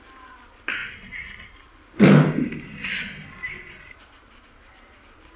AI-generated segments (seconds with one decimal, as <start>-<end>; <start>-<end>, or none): none